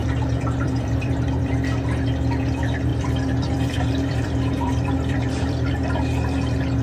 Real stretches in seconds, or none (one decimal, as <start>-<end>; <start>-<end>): 1.5-2.9; 5.7-6.8